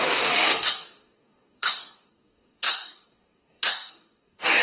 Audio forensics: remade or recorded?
remade